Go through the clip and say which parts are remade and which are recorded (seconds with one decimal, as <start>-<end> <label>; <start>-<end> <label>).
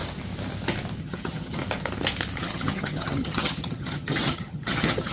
0.0-1.0 recorded; 1.0-1.6 remade; 1.6-2.4 recorded; 2.4-5.1 remade